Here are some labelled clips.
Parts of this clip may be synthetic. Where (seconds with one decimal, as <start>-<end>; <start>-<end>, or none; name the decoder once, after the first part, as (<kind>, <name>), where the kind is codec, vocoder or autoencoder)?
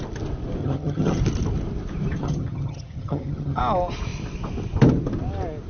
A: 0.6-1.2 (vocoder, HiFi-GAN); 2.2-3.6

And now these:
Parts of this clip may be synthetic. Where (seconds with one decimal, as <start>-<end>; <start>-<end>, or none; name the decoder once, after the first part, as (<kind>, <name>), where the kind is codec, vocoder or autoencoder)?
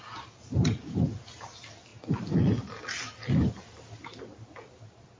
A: none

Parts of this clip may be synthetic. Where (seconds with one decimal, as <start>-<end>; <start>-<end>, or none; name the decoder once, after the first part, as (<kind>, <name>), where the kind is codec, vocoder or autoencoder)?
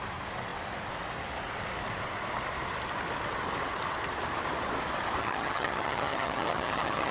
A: 5.2-7.1 (vocoder, HiFi-GAN)